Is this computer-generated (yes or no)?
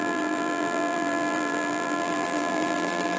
yes